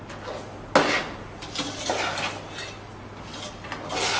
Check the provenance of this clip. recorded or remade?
recorded